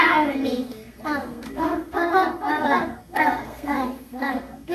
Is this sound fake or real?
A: fake